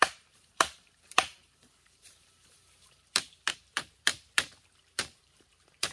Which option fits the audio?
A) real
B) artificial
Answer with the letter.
B